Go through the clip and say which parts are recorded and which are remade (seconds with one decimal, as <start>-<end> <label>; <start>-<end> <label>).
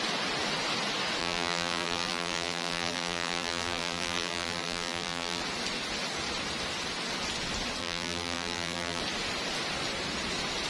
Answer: 0.0-1.2 recorded; 1.2-5.4 remade; 5.4-7.8 recorded; 7.8-9.0 remade; 9.0-10.7 recorded